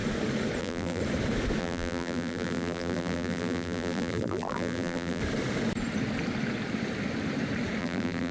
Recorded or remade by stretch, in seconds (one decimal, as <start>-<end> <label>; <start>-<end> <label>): 0.0-0.6 recorded; 0.6-1.0 remade; 1.0-1.6 recorded; 1.6-5.2 remade; 5.2-7.8 recorded; 7.8-8.3 remade